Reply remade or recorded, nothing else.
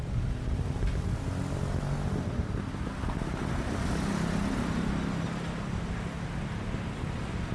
recorded